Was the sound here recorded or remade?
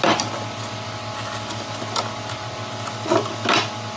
recorded